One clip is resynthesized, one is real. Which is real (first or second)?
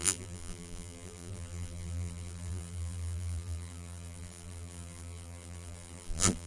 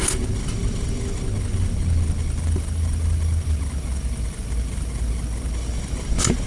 second